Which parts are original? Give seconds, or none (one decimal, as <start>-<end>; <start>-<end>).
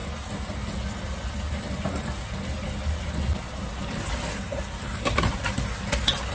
0.0-6.3